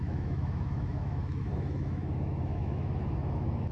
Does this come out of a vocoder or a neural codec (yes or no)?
yes